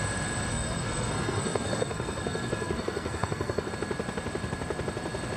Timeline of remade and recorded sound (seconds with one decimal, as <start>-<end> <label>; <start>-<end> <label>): 0.0-0.5 recorded; 0.5-3.7 remade; 3.7-5.4 recorded